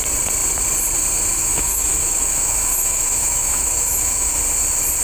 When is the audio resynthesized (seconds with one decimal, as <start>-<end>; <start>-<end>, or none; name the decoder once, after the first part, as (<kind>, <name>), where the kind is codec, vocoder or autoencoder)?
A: 1.4-4.4 (autoencoder, DAC-VAE)